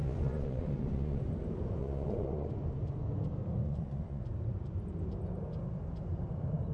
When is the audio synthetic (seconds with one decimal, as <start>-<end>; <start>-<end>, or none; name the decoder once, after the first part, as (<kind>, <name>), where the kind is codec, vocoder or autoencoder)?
0.0-1.2 (vocoder, Vocos); 1.8-2.5; 3.6-4.2